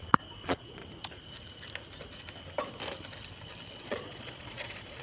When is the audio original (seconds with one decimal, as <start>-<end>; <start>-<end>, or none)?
0.8-3.8